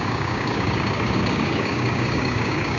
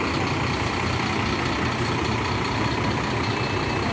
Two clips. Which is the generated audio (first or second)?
first